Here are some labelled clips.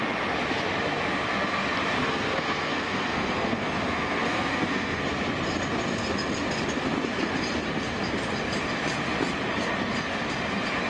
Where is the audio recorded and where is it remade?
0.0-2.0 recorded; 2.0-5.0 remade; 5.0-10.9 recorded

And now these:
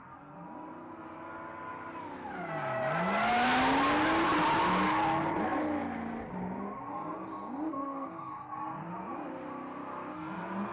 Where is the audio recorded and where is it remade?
0.0-7.7 recorded; 7.7-8.3 remade; 8.3-10.7 recorded

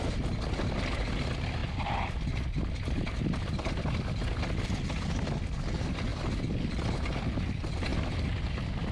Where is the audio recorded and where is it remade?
0.0-8.9 recorded

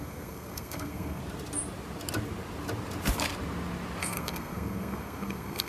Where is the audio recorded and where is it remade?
0.0-1.2 remade; 1.2-4.0 recorded; 4.0-5.7 remade

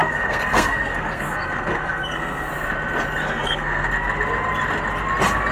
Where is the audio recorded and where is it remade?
0.0-2.5 remade; 2.5-3.2 recorded; 3.2-3.9 remade; 3.9-5.5 recorded

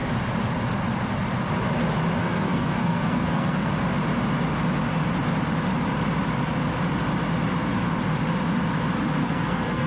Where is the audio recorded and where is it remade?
0.0-2.2 recorded; 2.2-3.7 remade; 3.7-9.2 recorded; 9.2-9.9 remade